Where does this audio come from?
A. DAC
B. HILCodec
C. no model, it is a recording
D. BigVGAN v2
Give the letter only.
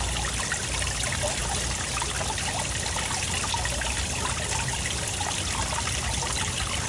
C